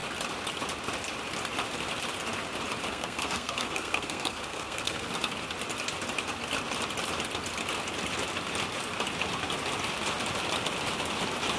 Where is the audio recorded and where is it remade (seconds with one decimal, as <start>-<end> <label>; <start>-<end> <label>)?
0.0-2.9 recorded; 2.9-5.1 remade; 5.1-11.6 recorded